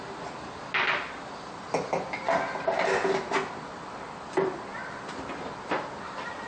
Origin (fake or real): real